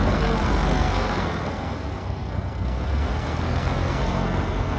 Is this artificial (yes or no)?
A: yes